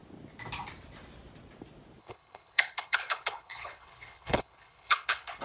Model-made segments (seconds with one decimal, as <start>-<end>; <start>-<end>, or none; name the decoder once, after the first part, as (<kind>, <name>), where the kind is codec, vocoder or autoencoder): 2.0-5.4 (codec, HILCodec)